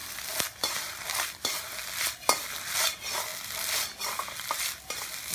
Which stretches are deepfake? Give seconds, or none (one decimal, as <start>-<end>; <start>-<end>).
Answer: none